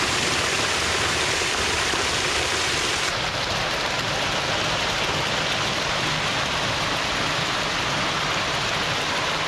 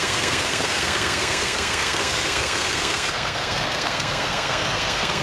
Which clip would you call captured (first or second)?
first